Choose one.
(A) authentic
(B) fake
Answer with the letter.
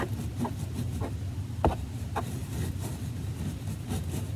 A